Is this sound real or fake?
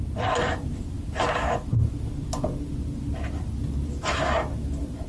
fake